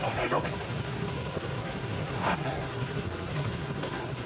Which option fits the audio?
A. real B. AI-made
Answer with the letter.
B